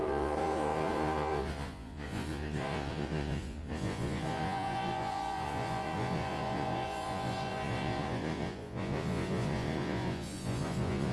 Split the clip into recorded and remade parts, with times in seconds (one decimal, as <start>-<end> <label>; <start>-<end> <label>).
0.0-11.1 remade